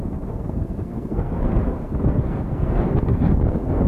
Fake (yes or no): yes